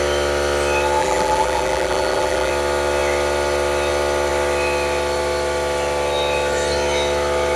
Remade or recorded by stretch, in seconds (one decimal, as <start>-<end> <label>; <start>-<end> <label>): 0.0-1.0 recorded; 1.0-2.5 remade; 2.5-7.6 recorded